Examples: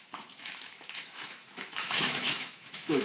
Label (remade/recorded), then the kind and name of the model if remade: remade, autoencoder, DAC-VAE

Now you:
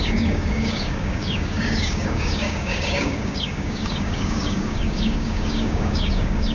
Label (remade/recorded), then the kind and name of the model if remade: remade, codec, DAC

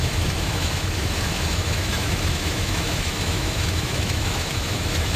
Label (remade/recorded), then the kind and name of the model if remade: remade, autoencoder, DAC-VAE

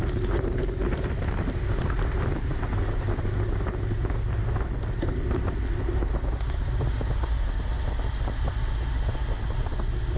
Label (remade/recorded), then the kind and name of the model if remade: recorded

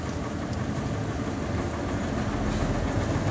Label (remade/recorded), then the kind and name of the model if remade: recorded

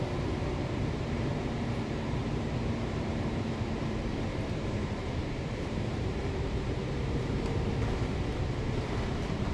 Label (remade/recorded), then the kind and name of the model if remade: remade, vocoder, BigVGAN v2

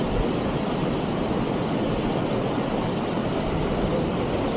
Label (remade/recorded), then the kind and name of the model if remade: recorded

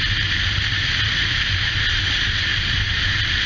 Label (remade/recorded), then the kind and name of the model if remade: recorded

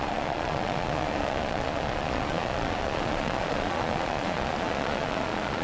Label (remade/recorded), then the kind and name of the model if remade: remade, vocoder, Vocos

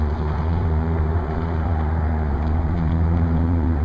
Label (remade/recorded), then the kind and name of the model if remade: remade, vocoder, Vocos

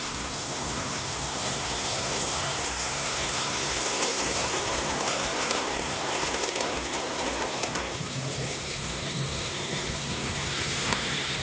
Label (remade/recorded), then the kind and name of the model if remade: remade, codec, SNAC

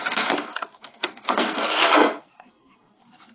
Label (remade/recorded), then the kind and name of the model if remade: remade, codec, SNAC